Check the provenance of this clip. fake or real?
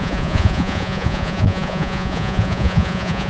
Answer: fake